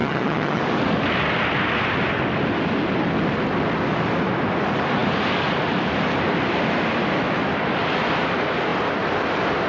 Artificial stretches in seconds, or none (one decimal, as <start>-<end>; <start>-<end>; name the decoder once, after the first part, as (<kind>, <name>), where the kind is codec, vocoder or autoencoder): 0.0-0.6 (vocoder, HiFi-GAN)